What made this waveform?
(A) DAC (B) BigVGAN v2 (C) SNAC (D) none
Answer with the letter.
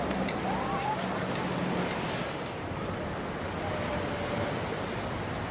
D